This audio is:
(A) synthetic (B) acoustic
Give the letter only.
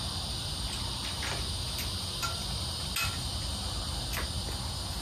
B